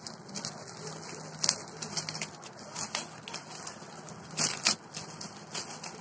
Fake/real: real